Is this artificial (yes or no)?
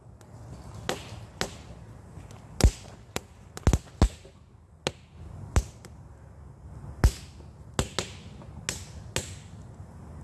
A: no